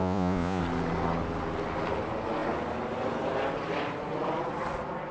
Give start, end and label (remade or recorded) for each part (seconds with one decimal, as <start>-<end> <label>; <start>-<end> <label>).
0.0-0.6 remade; 0.6-5.1 recorded